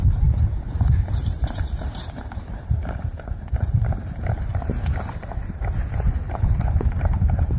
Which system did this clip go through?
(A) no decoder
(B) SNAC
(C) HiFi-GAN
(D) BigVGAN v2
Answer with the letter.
D